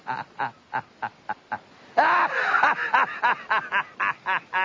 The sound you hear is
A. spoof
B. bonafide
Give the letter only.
B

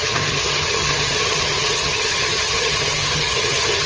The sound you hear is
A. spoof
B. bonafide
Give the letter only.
A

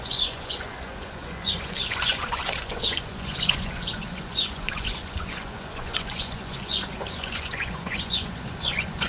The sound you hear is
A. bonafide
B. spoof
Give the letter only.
B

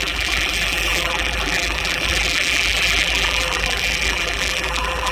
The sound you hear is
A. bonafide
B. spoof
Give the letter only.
B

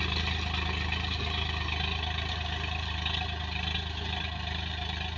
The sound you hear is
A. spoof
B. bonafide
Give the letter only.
B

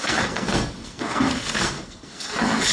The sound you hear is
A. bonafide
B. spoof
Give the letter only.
B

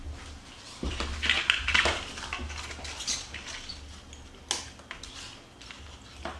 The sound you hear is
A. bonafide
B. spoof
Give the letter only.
A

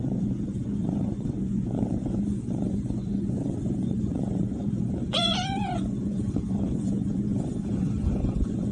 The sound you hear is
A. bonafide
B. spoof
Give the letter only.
B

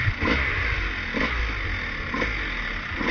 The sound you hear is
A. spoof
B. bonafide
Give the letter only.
B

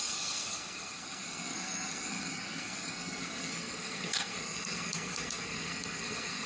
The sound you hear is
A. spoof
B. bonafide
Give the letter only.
A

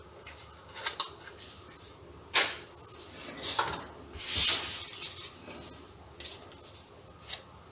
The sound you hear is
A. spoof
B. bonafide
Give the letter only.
B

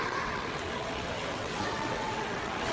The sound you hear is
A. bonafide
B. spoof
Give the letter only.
B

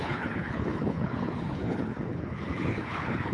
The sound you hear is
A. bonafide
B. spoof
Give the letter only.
B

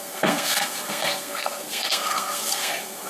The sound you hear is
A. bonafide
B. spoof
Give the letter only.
B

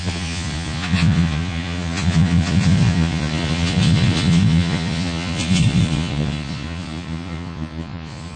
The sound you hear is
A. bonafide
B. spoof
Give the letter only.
B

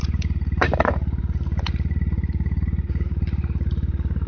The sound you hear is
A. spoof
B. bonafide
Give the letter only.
A